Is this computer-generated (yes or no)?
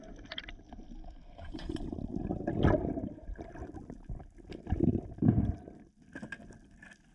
no